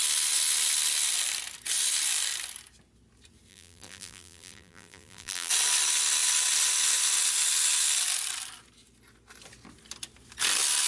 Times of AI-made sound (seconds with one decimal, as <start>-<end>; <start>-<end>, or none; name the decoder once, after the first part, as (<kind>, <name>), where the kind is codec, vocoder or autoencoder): 3.5-5.5 (vocoder, BigVGAN v2)